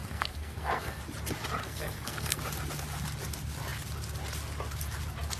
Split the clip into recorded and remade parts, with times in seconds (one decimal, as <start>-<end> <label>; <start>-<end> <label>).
0.0-1.0 remade; 1.0-1.6 recorded; 1.6-2.4 remade; 2.4-5.4 recorded

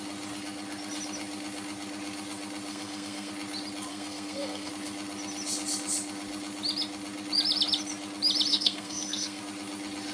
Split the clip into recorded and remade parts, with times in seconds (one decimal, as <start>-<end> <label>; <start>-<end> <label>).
0.0-2.7 recorded; 2.7-3.3 remade; 3.3-3.9 recorded; 3.9-4.7 remade; 4.7-8.5 recorded; 8.5-9.4 remade; 9.4-10.1 recorded

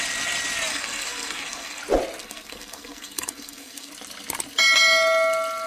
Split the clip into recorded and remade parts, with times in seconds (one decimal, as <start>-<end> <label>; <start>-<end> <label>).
0.0-0.7 recorded; 0.7-1.8 remade; 1.8-2.2 recorded; 2.2-3.9 remade; 3.9-5.7 recorded

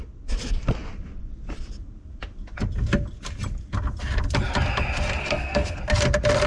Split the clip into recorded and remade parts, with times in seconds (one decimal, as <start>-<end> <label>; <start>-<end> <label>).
0.0-5.2 recorded; 5.2-5.8 remade; 5.8-6.5 recorded

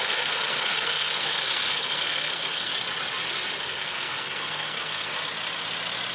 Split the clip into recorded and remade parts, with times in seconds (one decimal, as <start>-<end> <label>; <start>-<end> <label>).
0.0-2.7 remade; 2.7-3.6 recorded; 3.6-5.1 remade; 5.1-6.1 recorded

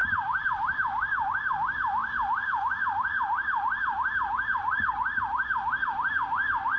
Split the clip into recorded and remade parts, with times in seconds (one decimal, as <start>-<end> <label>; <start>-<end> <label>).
0.0-6.8 recorded